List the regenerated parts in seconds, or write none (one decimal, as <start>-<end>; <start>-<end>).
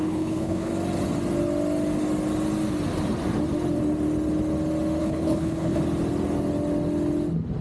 0.0-0.7; 5.0-5.8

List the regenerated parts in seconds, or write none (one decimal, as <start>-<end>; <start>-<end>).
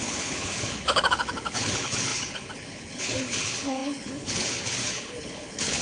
0.0-5.8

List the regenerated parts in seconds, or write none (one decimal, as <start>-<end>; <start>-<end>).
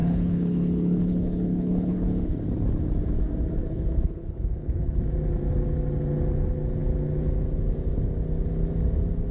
0.0-2.3; 3.6-5.0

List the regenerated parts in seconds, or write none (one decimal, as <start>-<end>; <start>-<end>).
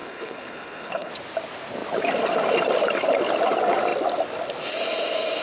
0.0-1.1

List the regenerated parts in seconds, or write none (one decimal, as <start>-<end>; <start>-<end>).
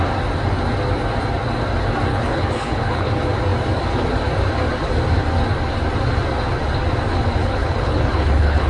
2.1-3.1; 7.4-8.7